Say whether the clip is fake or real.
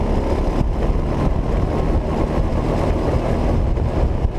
real